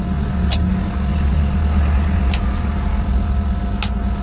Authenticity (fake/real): real